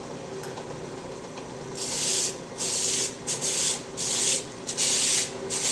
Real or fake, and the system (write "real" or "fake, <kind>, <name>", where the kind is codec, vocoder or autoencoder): real